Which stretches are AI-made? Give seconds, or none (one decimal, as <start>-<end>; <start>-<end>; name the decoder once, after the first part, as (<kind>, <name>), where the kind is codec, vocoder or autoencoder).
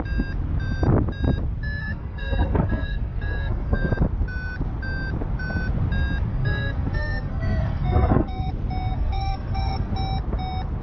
1.8-3.9 (codec, SNAC); 6.3-8.5; 8.9-9.9